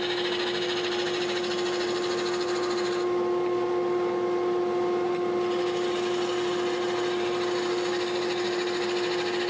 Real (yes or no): yes